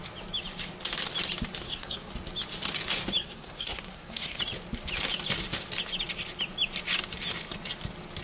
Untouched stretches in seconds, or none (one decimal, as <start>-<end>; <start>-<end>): 0.0-1.6; 2.1-3.2; 4.4-8.2

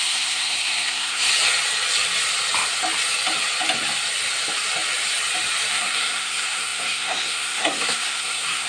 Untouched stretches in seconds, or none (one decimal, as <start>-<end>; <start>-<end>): 1.3-5.7

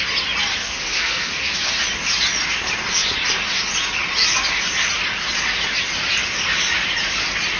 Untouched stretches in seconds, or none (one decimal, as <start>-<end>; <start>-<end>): 0.0-0.6; 1.7-7.6

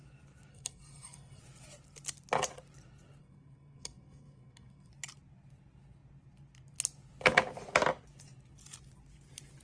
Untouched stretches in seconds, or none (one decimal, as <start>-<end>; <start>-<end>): 0.0-0.5; 1.4-3.2; 4.9-9.6

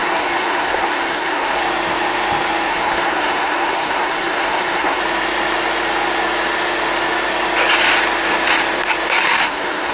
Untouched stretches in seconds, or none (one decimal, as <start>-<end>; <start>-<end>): 1.6-2.7; 5.0-9.4

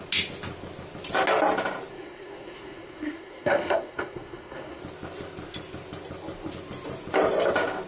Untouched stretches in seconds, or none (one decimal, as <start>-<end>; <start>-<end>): 0.0-1.9; 4.8-7.9

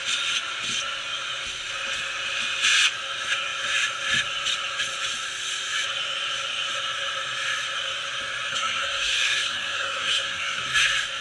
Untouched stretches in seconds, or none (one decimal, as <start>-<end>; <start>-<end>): 0.0-8.5; 10.6-11.2

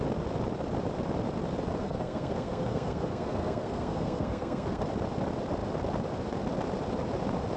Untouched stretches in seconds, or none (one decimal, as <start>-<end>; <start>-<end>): 0.0-1.8; 4.8-7.6